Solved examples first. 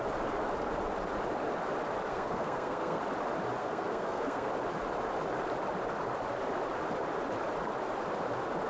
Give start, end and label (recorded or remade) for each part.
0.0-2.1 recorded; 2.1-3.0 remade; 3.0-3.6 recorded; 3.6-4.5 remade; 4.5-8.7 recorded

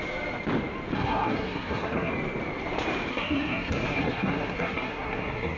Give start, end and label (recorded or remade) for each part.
0.0-0.9 recorded; 0.9-2.1 remade; 2.1-3.1 recorded; 3.1-5.6 remade